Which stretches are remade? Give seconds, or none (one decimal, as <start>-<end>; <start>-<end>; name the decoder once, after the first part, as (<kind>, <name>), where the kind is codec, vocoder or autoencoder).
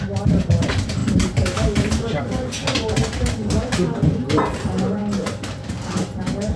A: 0.0-2.6 (vocoder, BigVGAN v2); 3.4-5.0